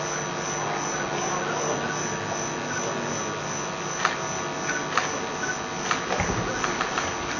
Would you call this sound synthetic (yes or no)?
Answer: no